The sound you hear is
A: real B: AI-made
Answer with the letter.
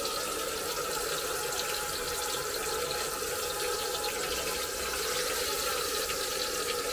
A